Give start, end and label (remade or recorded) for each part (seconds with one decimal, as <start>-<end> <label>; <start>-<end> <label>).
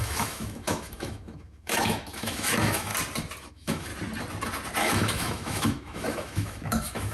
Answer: 0.0-2.9 remade; 2.9-3.5 recorded; 3.5-3.9 remade; 3.9-4.8 recorded; 4.8-7.1 remade